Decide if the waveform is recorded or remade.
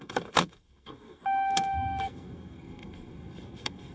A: remade